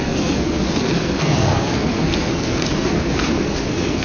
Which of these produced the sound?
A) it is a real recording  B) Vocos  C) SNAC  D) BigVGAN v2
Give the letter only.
C